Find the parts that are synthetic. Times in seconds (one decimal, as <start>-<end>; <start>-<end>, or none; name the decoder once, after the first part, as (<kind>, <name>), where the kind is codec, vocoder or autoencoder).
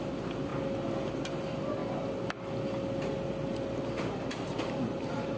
none